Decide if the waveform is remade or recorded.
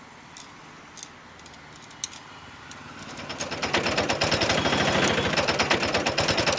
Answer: recorded